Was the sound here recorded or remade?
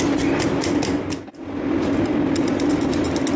recorded